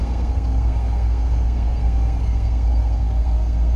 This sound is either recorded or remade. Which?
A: remade